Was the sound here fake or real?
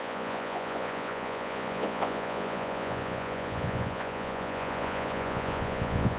fake